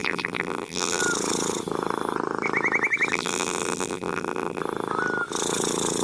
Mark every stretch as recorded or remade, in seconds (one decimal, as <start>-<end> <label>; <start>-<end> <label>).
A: 0.0-1.0 remade; 1.0-3.1 recorded; 3.1-4.6 remade; 4.6-6.0 recorded